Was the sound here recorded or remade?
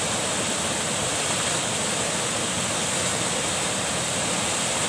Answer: recorded